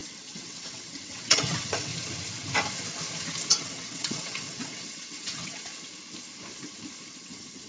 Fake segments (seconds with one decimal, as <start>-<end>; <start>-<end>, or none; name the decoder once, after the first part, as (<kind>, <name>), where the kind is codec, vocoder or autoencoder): 0.0-1.9 (vocoder, WaveNeXt); 3.5-5.7; 7.2-7.7